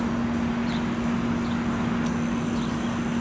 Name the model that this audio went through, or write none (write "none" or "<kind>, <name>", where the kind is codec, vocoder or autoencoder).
none